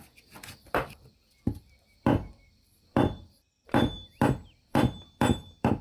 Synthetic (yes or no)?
yes